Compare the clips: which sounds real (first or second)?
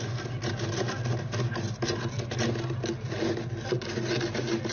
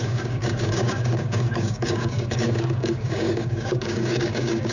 first